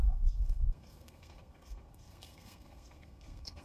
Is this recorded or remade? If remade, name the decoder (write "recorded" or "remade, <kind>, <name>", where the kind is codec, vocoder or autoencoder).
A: remade, codec, SNAC